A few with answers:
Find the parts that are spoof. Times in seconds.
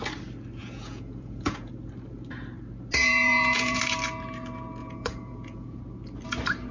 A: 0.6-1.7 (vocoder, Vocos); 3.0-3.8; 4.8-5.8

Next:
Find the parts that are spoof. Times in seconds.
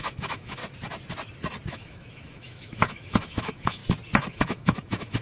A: 0.0-0.6 (autoencoder, DAC-VAE); 1.7-3.8; 4.3-5.2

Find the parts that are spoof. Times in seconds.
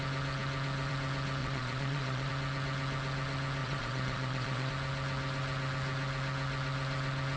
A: 1.4-2.3 (vocoder, Vocos); 3.6-4.7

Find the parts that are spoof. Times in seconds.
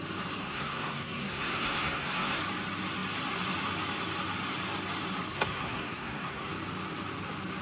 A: 0.4-2.4 (codec, SNAC); 5.3-6.5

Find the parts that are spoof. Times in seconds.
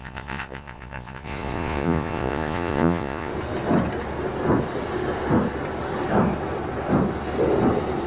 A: 0.0-3.3 (vocoder, Vocos)